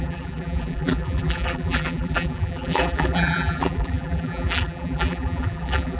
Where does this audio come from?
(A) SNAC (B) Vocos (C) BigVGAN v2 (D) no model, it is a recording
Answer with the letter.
C